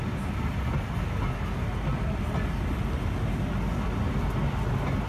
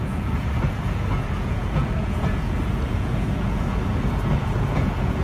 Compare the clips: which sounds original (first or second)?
first